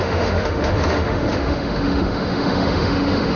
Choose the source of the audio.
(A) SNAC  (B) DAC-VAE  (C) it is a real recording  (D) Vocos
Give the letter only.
B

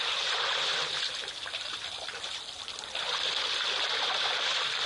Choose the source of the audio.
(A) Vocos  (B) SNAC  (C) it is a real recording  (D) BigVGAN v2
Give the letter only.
D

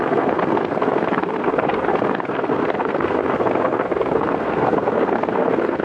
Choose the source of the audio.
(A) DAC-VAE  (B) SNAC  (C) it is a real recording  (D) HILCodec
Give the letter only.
B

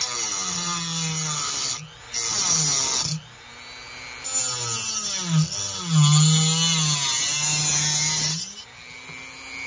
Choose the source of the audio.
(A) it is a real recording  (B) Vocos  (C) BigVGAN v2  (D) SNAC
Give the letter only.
A